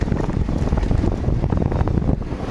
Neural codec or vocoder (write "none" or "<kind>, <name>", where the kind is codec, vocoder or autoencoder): none